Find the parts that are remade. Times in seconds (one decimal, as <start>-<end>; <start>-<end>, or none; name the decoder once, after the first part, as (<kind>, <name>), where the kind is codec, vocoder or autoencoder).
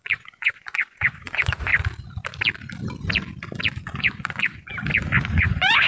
0.0-1.7 (vocoder, Vocos); 3.8-4.7; 5.3-5.9